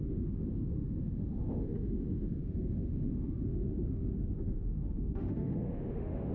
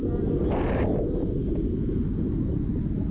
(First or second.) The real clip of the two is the second